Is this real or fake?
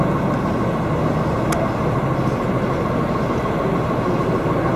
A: real